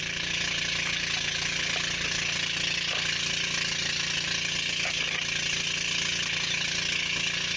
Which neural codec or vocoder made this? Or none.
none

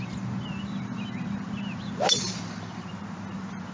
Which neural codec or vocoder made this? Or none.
none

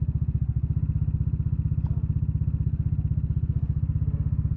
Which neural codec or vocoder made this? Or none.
none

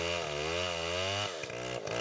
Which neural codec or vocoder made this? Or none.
none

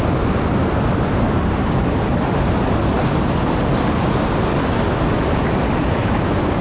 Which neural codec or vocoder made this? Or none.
none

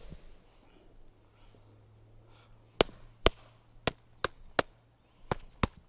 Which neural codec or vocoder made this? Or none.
none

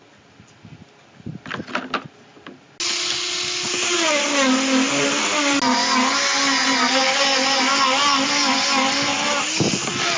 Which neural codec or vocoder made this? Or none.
none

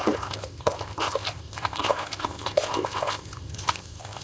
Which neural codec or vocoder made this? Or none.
codec, ZipCodec